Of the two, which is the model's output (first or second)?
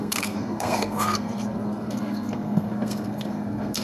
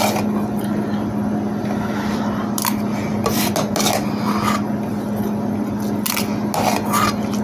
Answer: first